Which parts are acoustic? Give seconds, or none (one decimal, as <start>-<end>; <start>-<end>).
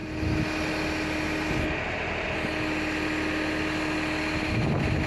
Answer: 0.0-5.1